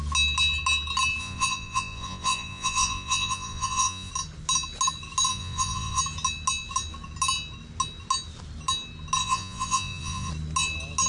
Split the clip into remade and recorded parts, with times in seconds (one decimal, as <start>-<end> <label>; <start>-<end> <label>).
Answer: 0.0-1.2 recorded; 1.2-4.1 remade; 4.1-5.3 recorded; 5.3-6.0 remade; 6.0-9.2 recorded; 9.2-10.3 remade; 10.3-11.1 recorded